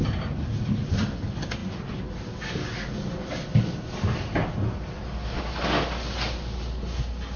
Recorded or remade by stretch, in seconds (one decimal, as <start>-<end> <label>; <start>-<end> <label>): 0.0-7.4 recorded